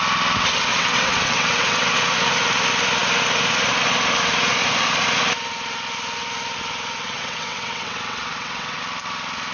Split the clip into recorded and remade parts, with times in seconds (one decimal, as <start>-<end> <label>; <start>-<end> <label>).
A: 0.0-0.7 recorded; 0.7-1.9 remade; 1.9-7.0 recorded; 7.0-8.8 remade; 8.8-9.5 recorded